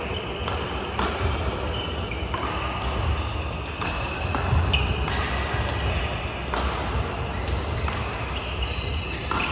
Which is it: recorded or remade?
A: recorded